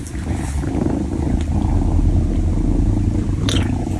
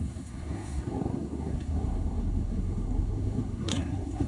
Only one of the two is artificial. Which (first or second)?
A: second